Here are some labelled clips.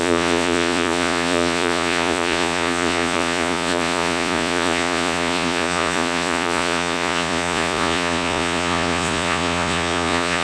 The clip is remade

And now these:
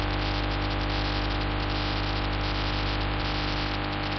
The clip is recorded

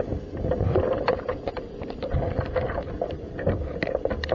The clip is recorded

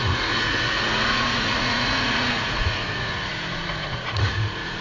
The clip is remade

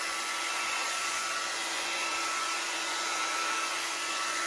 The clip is remade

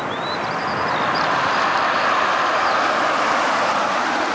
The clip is recorded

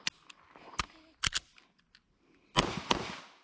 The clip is recorded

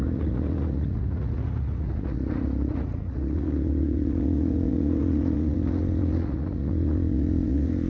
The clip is remade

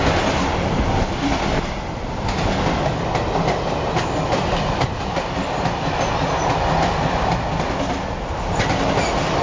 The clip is recorded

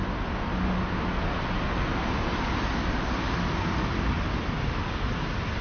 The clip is recorded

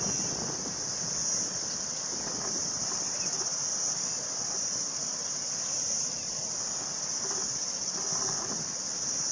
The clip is recorded